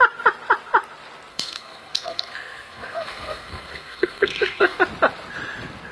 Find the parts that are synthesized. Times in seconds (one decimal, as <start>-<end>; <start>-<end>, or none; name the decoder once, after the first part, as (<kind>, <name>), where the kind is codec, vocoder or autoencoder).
1.3-4.8 (codec, SNAC)